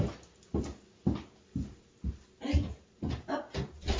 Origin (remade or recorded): recorded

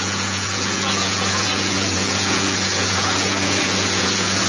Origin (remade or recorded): remade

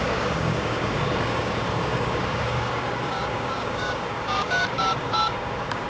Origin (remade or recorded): remade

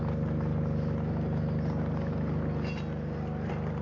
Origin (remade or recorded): recorded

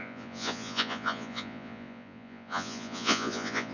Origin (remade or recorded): remade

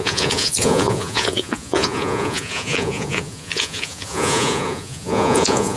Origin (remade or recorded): remade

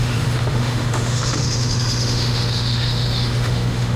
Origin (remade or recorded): remade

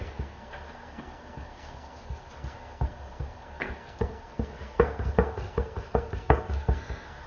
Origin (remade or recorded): remade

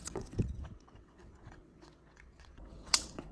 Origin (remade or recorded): remade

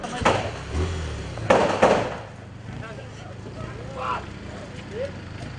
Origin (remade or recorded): recorded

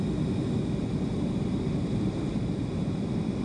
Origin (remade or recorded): recorded